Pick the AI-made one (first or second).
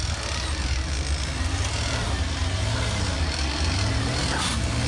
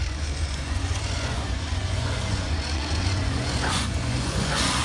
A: second